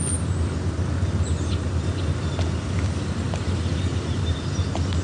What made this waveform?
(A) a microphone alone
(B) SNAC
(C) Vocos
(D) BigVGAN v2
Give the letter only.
A